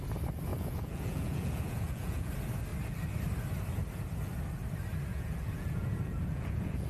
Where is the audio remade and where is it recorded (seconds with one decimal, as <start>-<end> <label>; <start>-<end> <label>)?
0.0-0.5 recorded; 0.5-2.3 remade; 2.3-5.1 recorded; 5.1-6.9 remade